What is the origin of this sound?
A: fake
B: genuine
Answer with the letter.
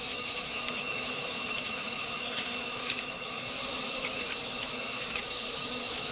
A